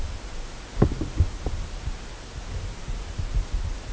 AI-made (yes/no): no